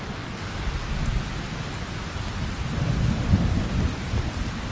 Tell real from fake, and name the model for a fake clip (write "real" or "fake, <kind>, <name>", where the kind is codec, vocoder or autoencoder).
real